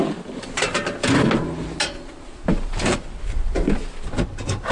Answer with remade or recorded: recorded